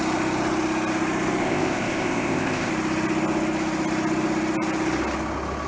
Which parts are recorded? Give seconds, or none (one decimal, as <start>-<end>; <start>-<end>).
0.0-1.4; 2.7-5.7